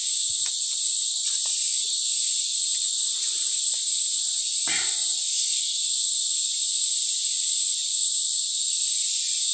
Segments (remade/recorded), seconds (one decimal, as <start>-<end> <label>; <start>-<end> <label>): 0.0-5.3 recorded; 5.3-5.9 remade; 5.9-9.5 recorded